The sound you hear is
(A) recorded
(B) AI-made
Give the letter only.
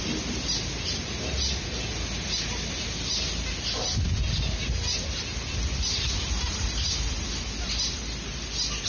A